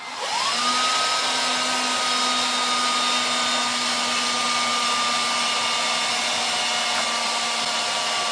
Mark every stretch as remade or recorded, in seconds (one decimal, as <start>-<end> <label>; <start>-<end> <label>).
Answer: 0.0-8.3 recorded